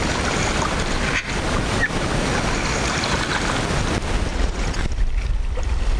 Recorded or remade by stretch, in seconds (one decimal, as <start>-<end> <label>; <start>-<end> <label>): 0.0-4.3 recorded; 4.3-4.8 remade; 4.8-6.0 recorded